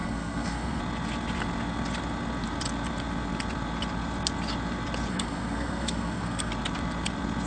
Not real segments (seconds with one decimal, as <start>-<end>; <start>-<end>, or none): 0.0-0.8; 5.1-6.5